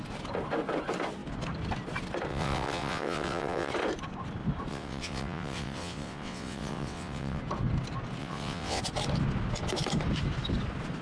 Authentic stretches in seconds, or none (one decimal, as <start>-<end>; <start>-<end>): 0.0-2.3; 3.7-4.7; 7.4-8.2; 8.8-11.0